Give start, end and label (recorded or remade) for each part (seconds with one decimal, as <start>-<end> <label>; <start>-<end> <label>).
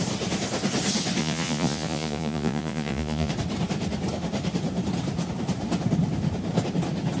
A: 0.0-1.2 recorded; 1.2-3.3 remade; 3.3-7.2 recorded